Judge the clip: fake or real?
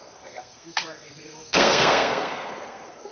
fake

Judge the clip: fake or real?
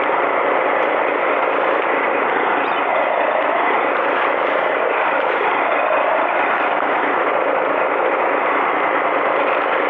real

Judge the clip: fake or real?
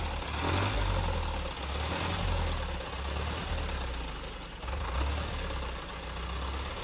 real